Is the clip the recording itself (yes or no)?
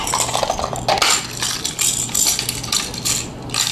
yes